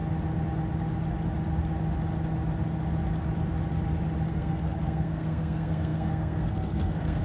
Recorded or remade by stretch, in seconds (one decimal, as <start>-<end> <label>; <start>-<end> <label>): 0.0-4.3 recorded; 4.3-7.2 remade